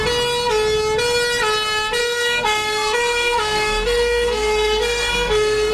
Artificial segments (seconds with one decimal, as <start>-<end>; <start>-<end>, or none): 2.0-5.7